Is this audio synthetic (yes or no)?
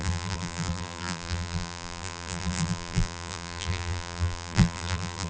yes